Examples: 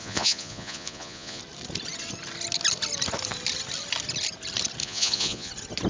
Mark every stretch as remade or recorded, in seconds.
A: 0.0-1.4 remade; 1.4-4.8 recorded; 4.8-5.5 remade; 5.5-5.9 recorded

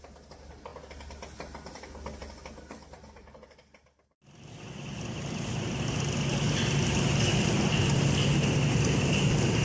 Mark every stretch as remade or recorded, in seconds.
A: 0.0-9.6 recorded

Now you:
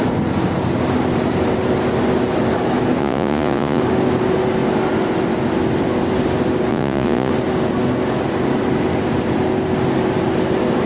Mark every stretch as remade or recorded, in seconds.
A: 0.0-3.0 recorded; 3.0-3.8 remade; 3.8-6.7 recorded; 6.7-7.3 remade; 7.3-10.9 recorded

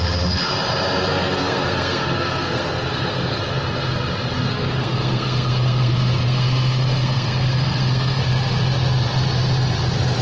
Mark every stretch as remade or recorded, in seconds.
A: 0.0-1.1 recorded; 1.1-3.4 remade; 3.4-4.5 recorded; 4.5-8.2 remade; 8.2-10.2 recorded